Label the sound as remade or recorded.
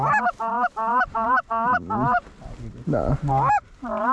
recorded